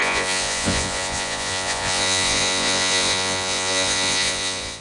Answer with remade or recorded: remade